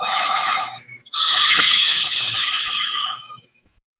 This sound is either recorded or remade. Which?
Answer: remade